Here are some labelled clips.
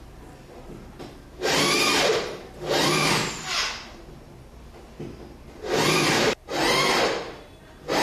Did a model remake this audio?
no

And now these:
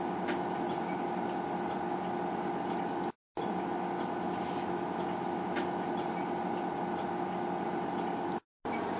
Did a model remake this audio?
no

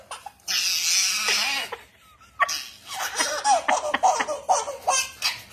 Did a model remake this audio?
no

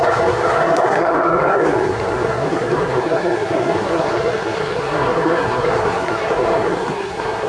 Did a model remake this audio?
yes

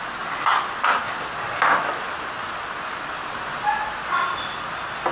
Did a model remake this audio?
no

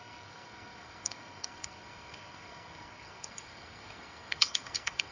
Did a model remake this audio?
yes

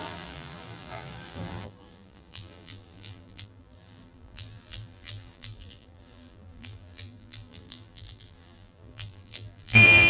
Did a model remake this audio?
yes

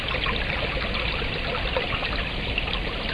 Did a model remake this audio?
no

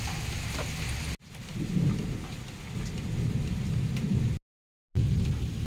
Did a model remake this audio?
no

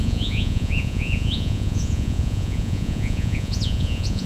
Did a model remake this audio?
yes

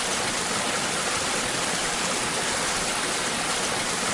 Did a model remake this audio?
no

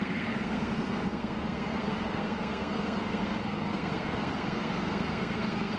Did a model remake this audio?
yes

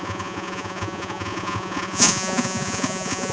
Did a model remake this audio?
yes